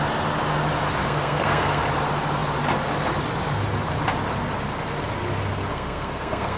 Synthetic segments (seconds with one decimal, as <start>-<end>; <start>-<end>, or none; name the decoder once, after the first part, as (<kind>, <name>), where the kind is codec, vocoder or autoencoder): 1.0-1.8 (codec, SNAC); 5.7-6.6